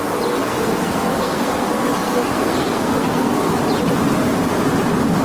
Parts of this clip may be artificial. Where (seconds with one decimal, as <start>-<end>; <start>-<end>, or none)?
0.4-3.5